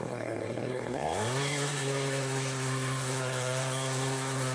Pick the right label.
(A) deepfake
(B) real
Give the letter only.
A